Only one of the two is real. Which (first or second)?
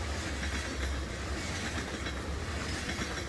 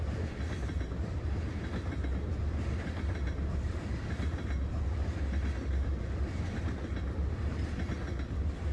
first